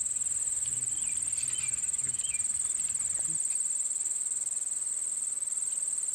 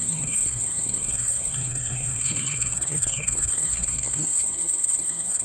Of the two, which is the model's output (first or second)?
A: second